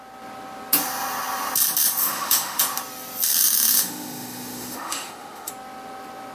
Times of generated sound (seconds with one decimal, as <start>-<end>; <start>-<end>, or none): 2.0-2.6; 3.4-5.5

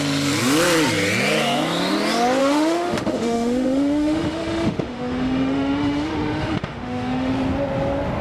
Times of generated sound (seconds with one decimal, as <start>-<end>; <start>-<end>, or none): 2.4-7.3

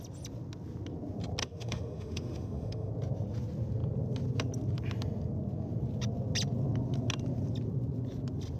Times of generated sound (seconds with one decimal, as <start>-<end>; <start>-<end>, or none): 1.4-2.9

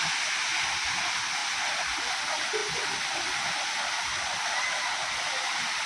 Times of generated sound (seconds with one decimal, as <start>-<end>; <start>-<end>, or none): none

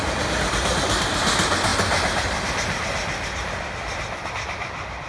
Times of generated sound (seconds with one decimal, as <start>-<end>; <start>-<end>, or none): none